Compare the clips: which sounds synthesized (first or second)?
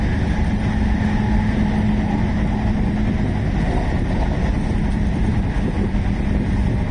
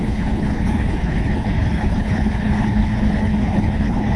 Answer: second